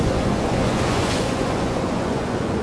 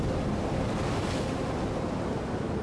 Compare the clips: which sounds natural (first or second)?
second